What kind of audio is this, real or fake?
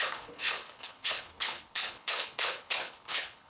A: fake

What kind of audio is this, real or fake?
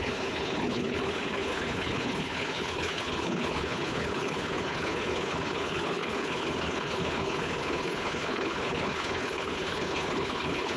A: fake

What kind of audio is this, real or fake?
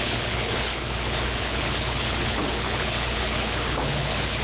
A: fake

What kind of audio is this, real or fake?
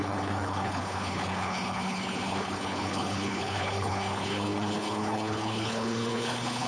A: fake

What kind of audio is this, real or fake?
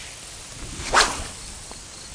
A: real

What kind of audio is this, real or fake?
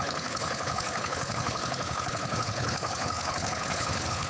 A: fake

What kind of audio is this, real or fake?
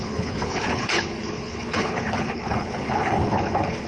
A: fake